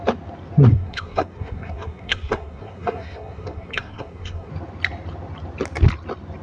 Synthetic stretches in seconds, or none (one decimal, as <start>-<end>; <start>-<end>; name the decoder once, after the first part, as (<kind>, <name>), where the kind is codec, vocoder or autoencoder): 0.7-4.5 (codec, SNAC)